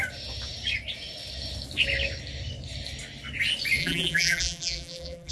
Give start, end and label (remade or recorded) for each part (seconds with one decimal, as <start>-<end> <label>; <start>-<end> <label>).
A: 0.0-3.8 recorded; 3.8-5.3 remade